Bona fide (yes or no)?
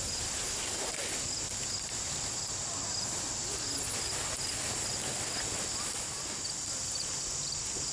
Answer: yes